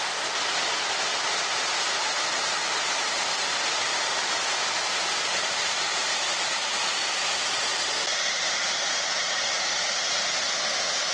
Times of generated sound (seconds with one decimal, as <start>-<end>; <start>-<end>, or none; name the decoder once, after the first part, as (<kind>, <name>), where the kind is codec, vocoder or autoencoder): 5.9-8.2 (vocoder, BigVGAN v2)